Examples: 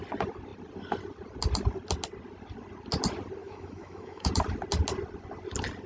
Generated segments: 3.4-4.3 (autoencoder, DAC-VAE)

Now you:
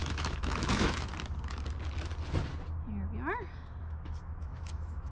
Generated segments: 0.0-1.1 (autoencoder, DAC-VAE); 3.8-5.1